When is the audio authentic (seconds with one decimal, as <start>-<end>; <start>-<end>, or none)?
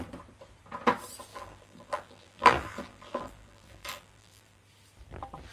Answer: 0.0-1.3; 4.6-5.5